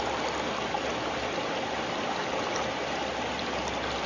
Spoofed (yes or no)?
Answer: no